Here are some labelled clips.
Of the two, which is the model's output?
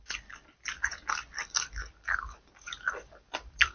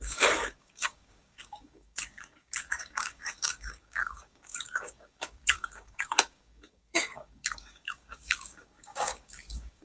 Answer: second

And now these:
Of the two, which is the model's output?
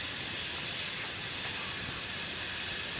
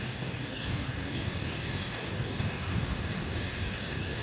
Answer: second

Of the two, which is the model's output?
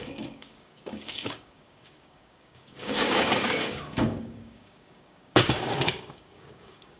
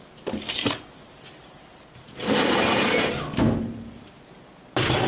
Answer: first